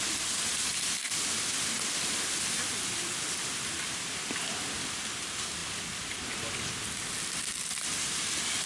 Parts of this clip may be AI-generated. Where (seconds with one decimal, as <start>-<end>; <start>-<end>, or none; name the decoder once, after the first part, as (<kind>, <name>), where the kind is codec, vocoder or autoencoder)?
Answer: none